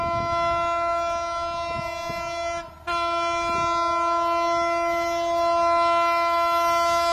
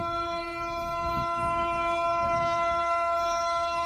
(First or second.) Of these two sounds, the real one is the first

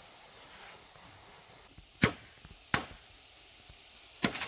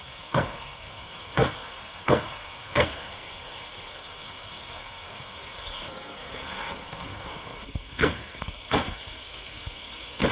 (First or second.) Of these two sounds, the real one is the first